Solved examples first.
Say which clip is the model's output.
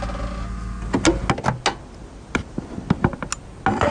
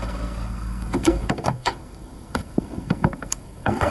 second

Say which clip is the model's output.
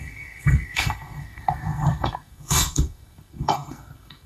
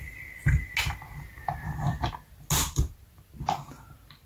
first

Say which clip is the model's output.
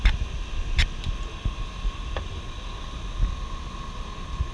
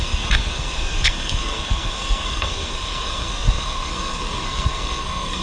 second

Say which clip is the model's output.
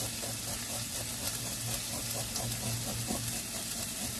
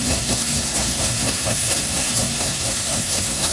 second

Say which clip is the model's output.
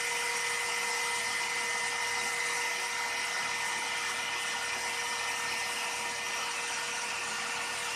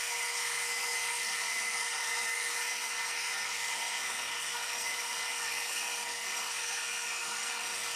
second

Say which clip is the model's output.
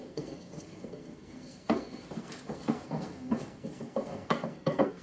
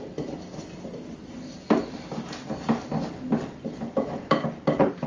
first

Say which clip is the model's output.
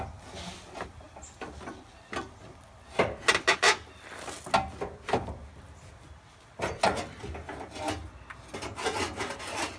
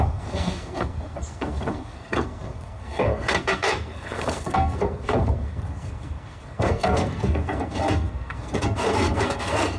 second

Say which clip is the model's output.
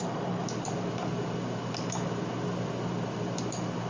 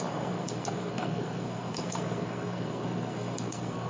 second